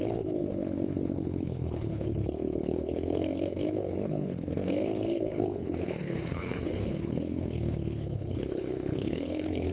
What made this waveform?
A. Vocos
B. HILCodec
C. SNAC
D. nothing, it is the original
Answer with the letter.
B